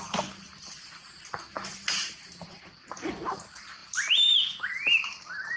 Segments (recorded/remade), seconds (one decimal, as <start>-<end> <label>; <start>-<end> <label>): 0.0-2.0 recorded; 2.0-2.7 remade; 2.7-5.6 recorded